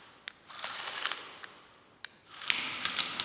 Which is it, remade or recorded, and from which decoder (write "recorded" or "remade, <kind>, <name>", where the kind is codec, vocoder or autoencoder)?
recorded